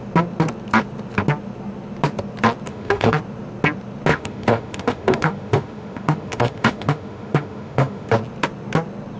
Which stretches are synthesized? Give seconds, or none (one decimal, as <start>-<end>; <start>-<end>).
2.7-3.2; 4.1-8.1